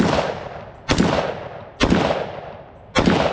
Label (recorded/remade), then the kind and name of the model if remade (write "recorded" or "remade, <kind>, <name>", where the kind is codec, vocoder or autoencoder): recorded